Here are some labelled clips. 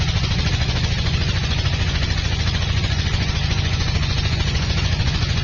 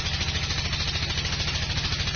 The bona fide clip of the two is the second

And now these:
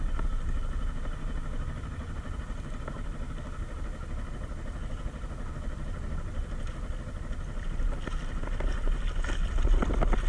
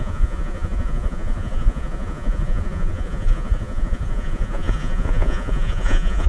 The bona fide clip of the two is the first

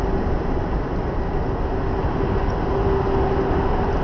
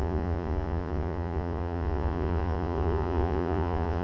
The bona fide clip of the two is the first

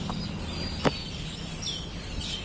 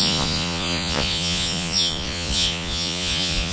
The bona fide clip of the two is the first